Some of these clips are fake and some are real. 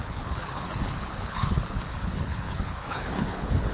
fake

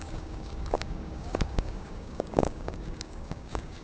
fake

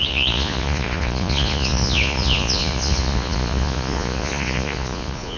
fake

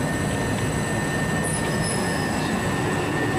real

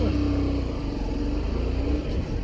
real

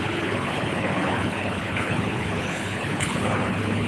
fake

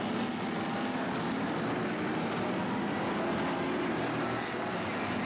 real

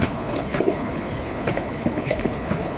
fake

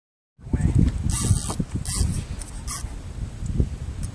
real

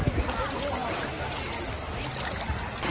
real